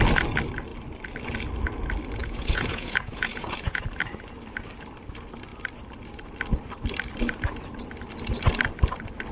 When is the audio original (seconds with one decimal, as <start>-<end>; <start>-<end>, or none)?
0.0-2.2; 3.8-9.3